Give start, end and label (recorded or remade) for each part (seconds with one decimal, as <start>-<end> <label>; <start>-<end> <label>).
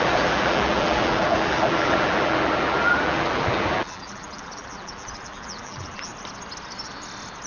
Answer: 0.0-6.1 remade; 6.1-7.5 recorded